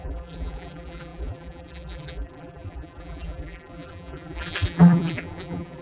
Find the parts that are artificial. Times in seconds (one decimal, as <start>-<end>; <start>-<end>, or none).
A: 0.0-5.8